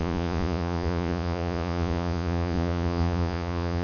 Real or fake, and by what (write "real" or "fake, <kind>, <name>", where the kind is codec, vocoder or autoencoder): fake, vocoder, Vocos